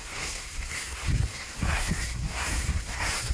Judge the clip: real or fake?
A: fake